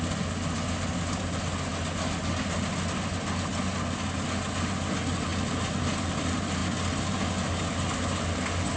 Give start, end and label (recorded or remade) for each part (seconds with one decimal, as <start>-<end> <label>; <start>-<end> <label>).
0.0-8.8 recorded